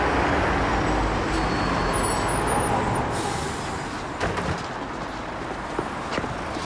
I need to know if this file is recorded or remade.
recorded